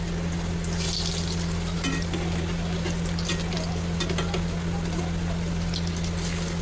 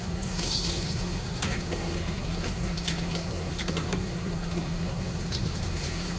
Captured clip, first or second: first